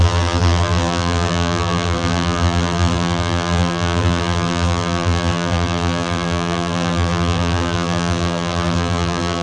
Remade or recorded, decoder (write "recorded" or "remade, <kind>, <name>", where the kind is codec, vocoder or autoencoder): remade, vocoder, BigVGAN v2